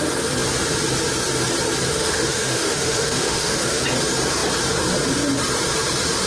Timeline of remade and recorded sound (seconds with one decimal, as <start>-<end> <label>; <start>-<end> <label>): 0.0-1.9 recorded; 1.9-3.8 remade; 3.8-6.3 recorded